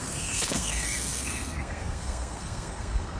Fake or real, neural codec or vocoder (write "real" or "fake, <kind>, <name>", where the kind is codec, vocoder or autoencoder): fake, codec, SNAC